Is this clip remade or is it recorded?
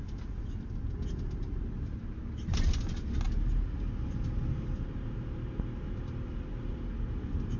recorded